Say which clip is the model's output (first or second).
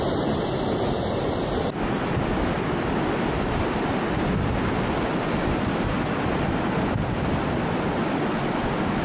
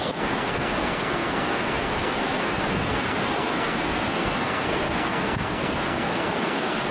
second